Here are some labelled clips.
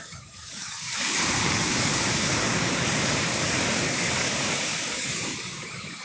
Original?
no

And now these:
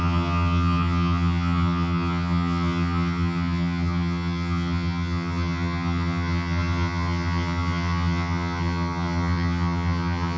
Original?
no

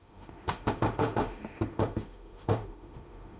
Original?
no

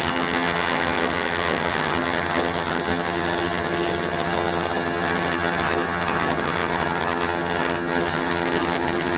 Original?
no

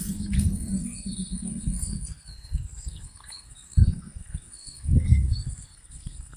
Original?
no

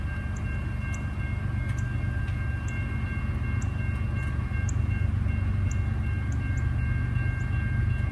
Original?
yes